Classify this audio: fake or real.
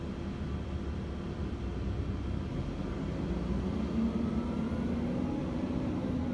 real